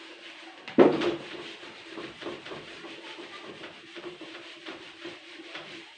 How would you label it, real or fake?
fake